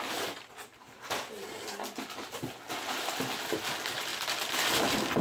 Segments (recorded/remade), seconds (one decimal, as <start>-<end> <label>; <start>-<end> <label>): 0.0-4.1 recorded; 4.1-4.7 remade; 4.7-5.2 recorded